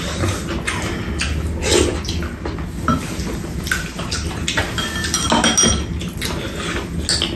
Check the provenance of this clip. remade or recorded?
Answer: recorded